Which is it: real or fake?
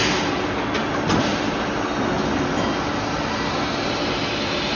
real